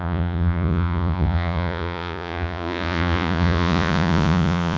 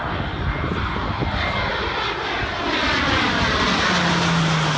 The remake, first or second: first